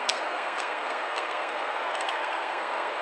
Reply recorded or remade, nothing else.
remade